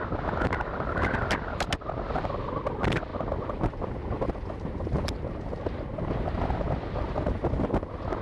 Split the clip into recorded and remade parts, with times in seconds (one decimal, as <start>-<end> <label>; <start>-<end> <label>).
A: 0.0-8.2 recorded